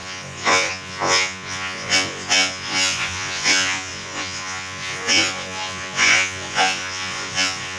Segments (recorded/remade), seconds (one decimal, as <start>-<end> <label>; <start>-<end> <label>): 0.0-7.8 remade